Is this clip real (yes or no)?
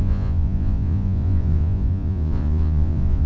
no